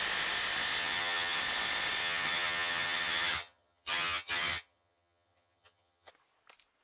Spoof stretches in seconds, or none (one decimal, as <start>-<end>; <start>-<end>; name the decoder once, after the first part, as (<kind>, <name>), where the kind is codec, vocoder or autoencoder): 0.8-1.4 (vocoder, HiFi-GAN); 2.0-6.1